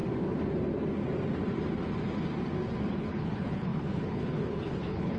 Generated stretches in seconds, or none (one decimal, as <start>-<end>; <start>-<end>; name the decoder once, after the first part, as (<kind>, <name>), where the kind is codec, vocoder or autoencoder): 2.9-5.2 (codec, HILCodec)